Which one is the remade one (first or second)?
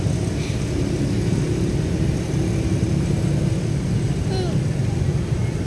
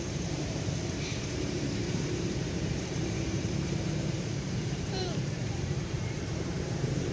second